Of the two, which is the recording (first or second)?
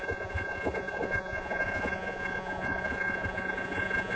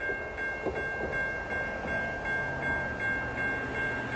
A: second